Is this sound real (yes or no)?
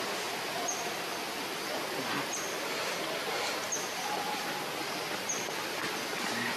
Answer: yes